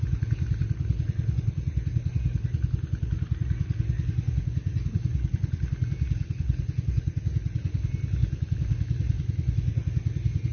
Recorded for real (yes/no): yes